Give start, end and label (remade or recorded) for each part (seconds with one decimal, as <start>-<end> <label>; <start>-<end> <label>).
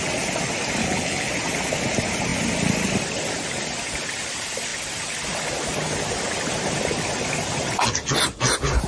0.0-0.8 recorded; 0.8-1.3 remade; 1.3-8.9 recorded